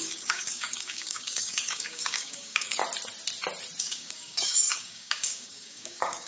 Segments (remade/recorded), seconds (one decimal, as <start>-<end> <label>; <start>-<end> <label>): 0.0-2.8 remade; 2.8-3.8 recorded; 3.8-6.3 remade